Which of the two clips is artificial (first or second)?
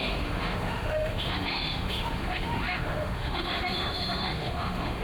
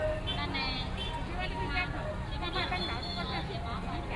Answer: first